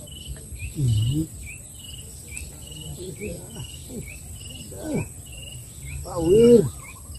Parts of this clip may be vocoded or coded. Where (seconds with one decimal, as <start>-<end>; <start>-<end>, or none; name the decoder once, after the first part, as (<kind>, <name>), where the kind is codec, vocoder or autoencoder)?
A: none